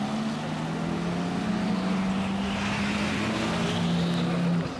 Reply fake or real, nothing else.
real